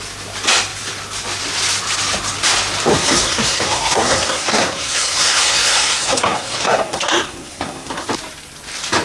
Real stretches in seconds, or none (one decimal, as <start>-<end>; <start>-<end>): 0.0-2.9; 8.1-9.0